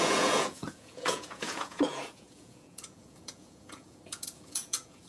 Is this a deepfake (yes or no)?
yes